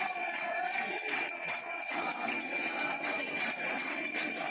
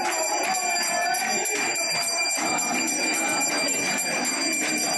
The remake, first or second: first